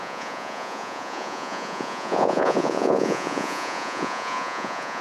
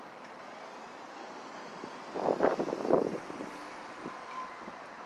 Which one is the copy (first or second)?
first